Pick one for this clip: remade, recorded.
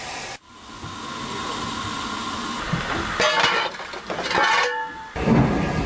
recorded